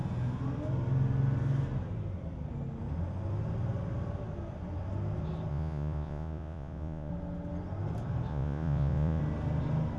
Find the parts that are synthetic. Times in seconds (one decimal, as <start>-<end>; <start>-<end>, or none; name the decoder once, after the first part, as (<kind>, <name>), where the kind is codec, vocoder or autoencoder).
5.5-7.1 (vocoder, Vocos); 8.3-9.2